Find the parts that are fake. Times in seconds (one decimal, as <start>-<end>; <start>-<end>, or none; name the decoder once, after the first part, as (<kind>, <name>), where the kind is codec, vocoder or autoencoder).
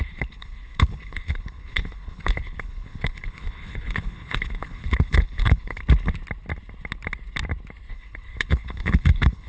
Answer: 0.0-5.8 (codec, HILCodec); 7.9-9.5